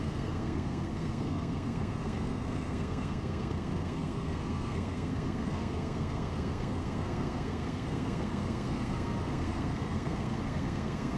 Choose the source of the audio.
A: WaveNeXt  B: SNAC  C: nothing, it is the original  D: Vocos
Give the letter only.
B